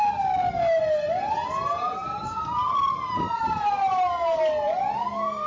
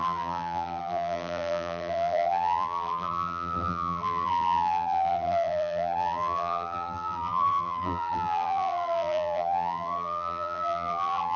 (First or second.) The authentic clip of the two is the first